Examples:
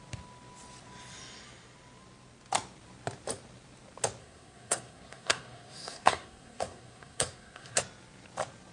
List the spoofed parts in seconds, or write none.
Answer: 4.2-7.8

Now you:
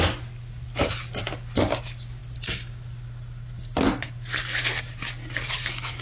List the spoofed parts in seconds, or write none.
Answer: none